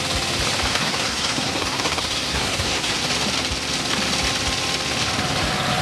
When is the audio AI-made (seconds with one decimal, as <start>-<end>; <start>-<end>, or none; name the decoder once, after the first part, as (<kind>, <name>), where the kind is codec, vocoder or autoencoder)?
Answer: 0.7-3.0 (codec, SNAC)